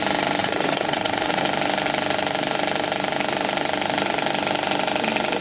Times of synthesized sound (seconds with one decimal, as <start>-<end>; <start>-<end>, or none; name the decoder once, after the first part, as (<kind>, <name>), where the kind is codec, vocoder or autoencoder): 0.4-1.4 (vocoder, WaveNeXt)